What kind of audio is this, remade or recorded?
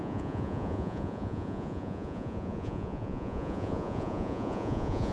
remade